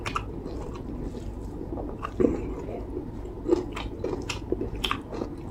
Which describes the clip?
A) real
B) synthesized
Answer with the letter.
A